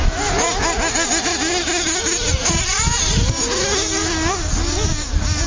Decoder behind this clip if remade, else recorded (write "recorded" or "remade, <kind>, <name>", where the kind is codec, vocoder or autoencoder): recorded